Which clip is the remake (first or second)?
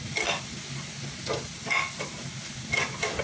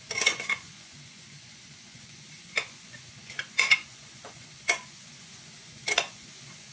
second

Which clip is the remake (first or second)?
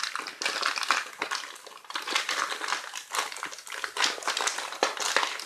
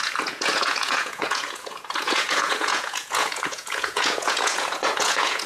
second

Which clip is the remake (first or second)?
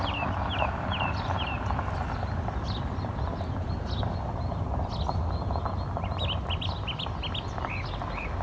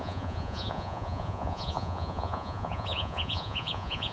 second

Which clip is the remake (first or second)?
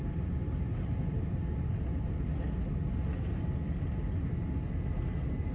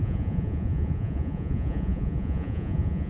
second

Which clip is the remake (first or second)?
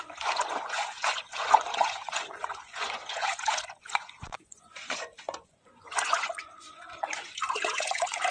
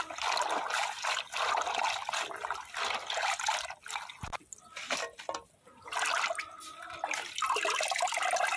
first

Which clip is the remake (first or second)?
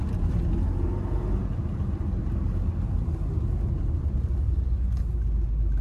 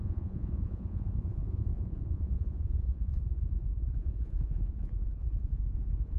second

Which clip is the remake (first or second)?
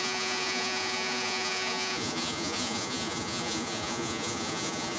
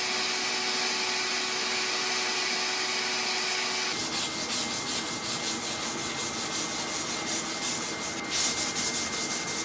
first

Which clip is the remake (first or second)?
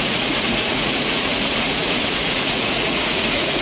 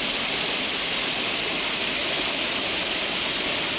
first